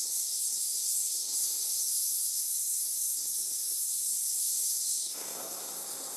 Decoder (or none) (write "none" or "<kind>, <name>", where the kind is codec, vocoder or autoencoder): codec, SNAC